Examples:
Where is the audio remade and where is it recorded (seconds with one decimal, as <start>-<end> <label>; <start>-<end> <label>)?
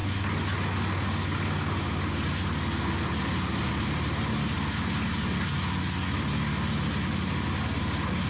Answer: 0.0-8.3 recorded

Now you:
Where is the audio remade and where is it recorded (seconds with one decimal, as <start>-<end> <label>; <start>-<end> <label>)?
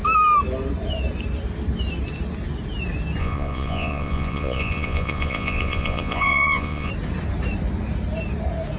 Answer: 0.0-3.2 recorded; 3.2-6.9 remade; 6.9-8.8 recorded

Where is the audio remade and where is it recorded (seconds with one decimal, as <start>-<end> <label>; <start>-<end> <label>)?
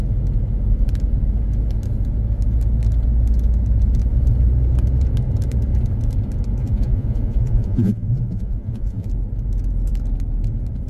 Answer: 0.0-6.6 recorded; 6.6-9.1 remade; 9.1-10.9 recorded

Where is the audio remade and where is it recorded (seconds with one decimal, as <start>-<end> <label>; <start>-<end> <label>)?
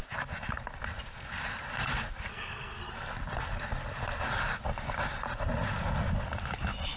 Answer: 0.0-2.3 recorded; 2.3-2.9 remade; 2.9-7.0 recorded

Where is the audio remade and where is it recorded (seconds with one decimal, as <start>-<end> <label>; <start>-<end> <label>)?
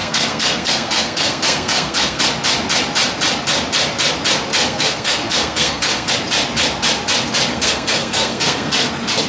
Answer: 0.0-2.2 remade; 2.2-4.5 recorded; 4.5-6.1 remade; 6.1-7.5 recorded; 7.5-8.9 remade; 8.9-9.3 recorded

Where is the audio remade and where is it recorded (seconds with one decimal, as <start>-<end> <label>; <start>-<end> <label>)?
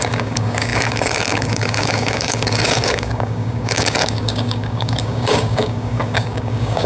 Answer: 0.0-6.9 remade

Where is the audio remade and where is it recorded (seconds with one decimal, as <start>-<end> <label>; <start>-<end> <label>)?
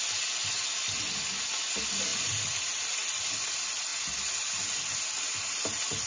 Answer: 0.0-2.1 recorded; 2.1-3.2 remade; 3.2-6.1 recorded